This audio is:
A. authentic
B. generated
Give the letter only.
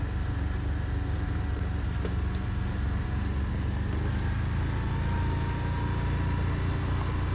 A